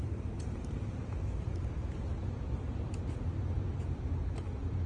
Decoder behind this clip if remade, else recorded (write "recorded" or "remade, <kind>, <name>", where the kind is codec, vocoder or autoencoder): remade, vocoder, BigVGAN v2